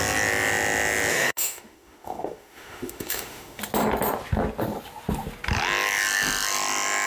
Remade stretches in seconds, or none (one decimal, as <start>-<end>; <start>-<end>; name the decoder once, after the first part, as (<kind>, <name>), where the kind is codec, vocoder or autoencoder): 1.1-3.6 (autoencoder, DAC-VAE)